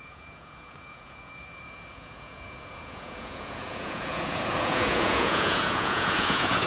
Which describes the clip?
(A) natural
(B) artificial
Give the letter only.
B